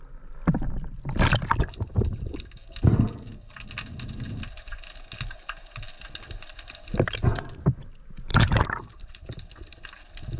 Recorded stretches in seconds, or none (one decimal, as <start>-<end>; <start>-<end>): 0.0-8.3